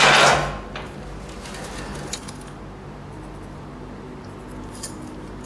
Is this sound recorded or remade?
recorded